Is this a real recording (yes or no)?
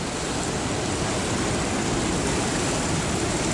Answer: yes